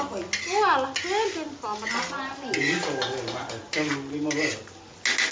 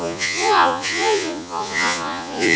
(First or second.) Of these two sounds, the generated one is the second